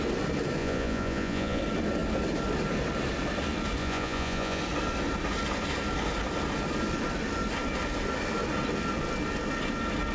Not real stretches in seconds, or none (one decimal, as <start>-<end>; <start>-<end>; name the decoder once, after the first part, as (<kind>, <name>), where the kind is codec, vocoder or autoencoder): 0.6-1.6 (vocoder, Vocos); 3.8-4.6